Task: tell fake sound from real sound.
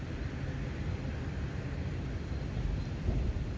fake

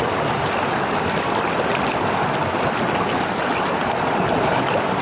real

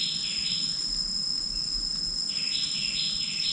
real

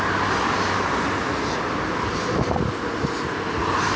real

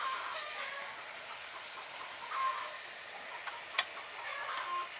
real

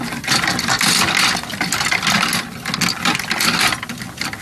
real